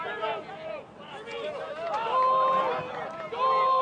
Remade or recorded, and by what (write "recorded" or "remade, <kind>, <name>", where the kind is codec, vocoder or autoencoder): recorded